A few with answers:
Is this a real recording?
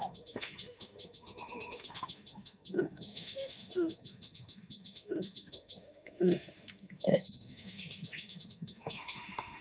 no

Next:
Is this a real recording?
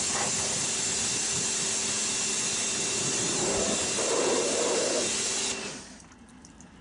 yes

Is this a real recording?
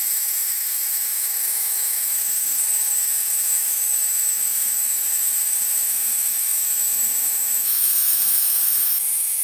no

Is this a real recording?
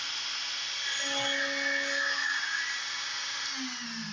yes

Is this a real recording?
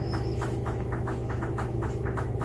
no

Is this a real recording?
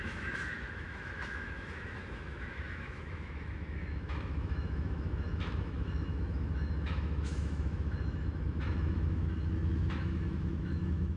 no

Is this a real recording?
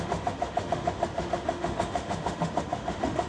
no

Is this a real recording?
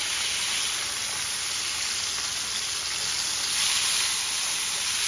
yes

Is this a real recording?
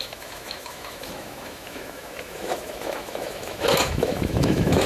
no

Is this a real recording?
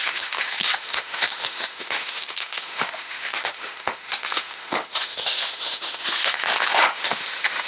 no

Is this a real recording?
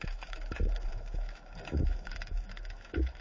no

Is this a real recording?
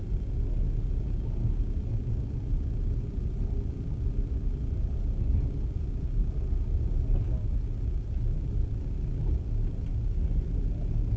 yes